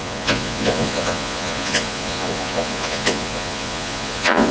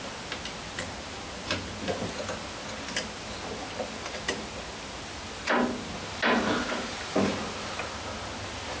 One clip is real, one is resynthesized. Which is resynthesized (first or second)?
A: first